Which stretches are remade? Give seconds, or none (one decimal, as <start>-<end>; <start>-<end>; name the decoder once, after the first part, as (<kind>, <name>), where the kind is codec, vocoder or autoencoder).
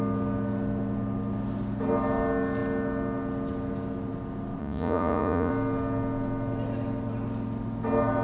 4.6-5.5 (vocoder, Vocos)